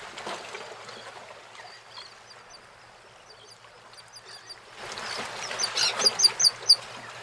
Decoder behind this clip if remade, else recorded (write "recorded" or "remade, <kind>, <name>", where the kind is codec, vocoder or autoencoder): recorded